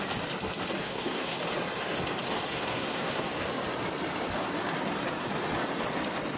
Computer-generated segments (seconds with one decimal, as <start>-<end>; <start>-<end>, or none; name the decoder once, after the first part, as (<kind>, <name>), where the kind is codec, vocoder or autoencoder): 0.8-1.4 (codec, SNAC); 2.5-3.3